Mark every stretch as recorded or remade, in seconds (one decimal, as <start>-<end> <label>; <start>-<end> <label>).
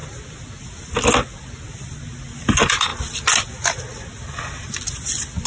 0.0-5.5 recorded